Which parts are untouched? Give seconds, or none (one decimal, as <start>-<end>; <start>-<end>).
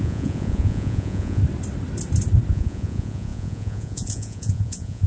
1.4-2.5